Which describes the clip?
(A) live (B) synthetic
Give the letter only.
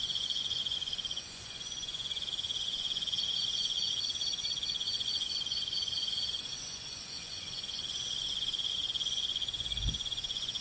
B